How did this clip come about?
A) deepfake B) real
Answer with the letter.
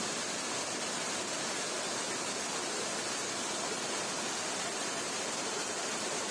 B